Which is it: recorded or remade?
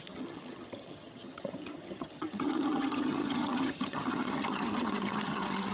remade